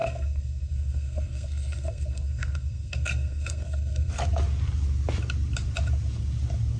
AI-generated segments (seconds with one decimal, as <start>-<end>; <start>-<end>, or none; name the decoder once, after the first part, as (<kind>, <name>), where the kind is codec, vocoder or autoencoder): 0.0-4.1 (codec, SNAC)